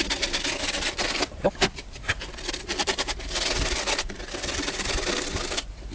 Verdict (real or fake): real